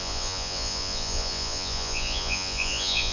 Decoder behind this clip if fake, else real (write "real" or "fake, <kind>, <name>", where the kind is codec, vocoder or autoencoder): fake, vocoder, Vocos